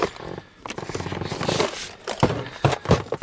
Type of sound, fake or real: real